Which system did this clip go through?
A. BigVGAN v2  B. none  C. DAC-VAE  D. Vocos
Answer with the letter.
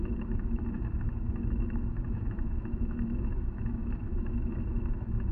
C